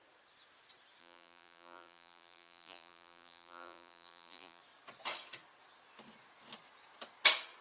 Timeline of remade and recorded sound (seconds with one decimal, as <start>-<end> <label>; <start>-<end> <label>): 0.0-1.0 recorded; 1.0-4.6 remade; 4.6-7.6 recorded